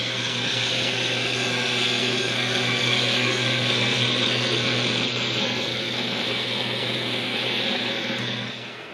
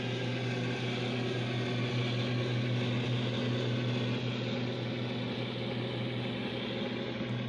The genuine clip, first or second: second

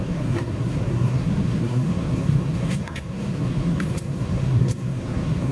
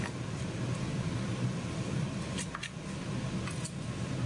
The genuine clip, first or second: second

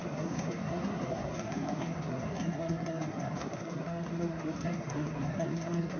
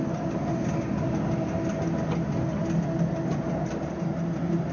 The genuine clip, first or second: second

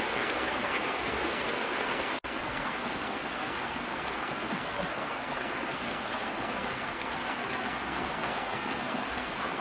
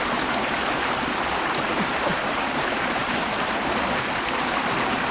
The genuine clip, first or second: second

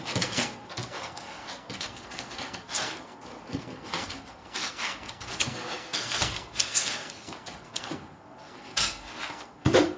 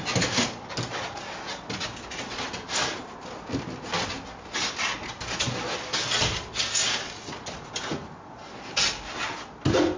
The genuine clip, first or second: second